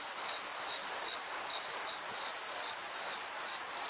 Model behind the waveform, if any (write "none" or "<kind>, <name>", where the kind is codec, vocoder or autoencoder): none